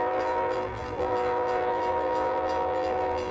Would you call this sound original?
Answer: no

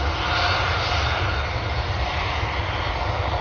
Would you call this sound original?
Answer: yes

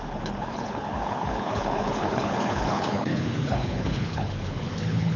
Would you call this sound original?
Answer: no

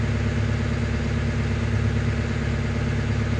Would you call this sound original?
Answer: yes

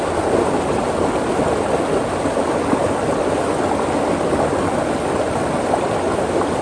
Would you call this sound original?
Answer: yes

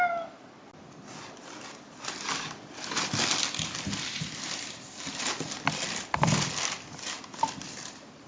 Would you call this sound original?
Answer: yes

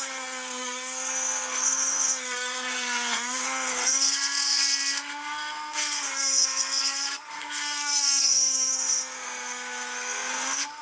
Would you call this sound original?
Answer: no